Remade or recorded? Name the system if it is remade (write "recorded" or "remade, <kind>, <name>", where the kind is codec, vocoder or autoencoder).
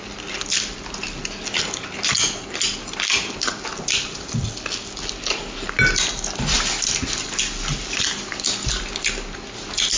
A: recorded